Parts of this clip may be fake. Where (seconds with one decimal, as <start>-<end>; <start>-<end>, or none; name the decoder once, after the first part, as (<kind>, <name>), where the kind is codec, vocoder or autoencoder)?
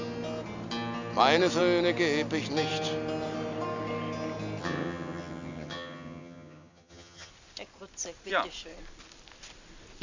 4.6-7.3 (vocoder, HiFi-GAN)